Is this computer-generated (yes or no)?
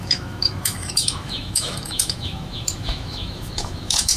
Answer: yes